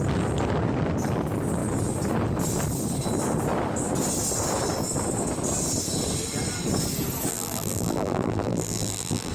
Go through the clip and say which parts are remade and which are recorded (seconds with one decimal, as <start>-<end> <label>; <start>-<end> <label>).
0.0-7.3 recorded; 7.3-9.3 remade